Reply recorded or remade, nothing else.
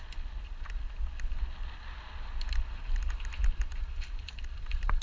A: recorded